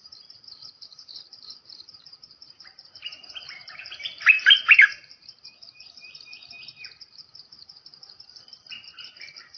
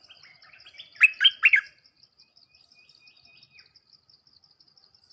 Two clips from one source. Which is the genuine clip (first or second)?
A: second